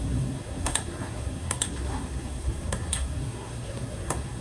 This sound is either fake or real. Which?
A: fake